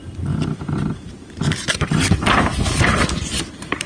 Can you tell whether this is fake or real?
real